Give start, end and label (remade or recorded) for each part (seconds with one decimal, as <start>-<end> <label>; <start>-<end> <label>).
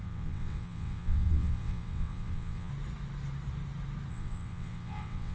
0.0-2.7 remade; 2.7-4.1 recorded; 4.1-5.3 remade